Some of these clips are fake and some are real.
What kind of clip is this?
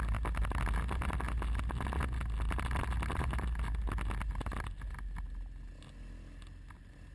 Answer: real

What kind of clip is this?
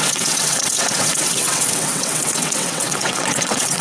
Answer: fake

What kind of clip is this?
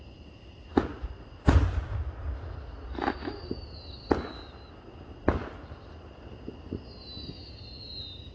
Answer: real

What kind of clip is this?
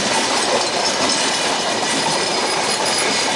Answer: real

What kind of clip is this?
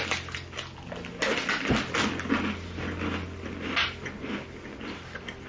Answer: real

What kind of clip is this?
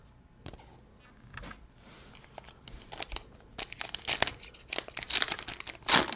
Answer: real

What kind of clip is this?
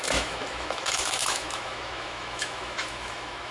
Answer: fake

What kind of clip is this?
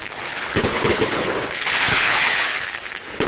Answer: fake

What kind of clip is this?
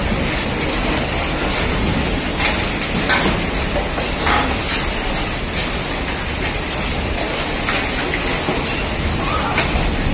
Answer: real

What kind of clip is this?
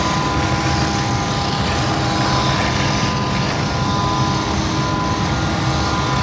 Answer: real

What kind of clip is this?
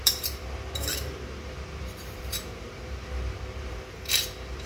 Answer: fake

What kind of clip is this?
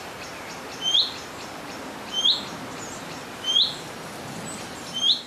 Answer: real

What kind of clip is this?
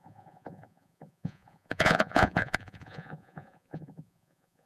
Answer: fake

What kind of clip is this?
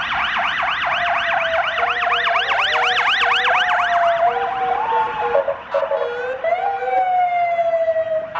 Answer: real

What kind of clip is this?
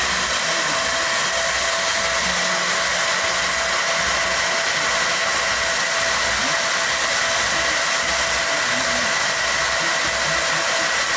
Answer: real